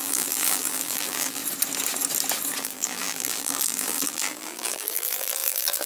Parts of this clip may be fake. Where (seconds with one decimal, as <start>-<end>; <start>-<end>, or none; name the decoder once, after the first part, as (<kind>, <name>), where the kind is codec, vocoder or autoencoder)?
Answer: 0.0-1.4 (vocoder, BigVGAN v2); 2.6-5.9